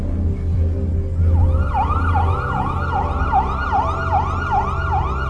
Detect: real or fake real